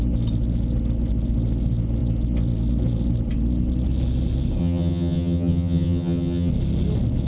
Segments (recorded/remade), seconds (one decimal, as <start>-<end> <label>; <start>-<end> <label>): 0.0-4.6 recorded; 4.6-6.5 remade; 6.5-7.3 recorded